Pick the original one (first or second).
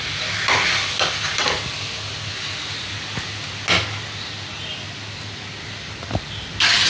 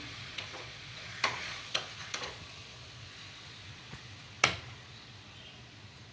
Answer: first